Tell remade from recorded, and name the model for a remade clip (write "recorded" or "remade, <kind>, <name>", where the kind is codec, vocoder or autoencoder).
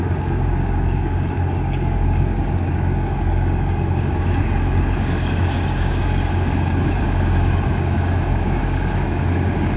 remade, codec, DAC